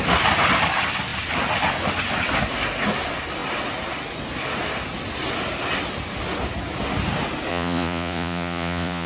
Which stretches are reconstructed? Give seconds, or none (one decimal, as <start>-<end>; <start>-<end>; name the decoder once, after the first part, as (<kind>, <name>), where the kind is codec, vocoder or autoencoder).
7.5-9.1 (vocoder, Vocos)